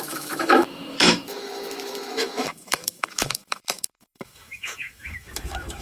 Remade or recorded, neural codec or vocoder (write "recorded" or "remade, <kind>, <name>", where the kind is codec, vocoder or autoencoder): remade, autoencoder, DAC-VAE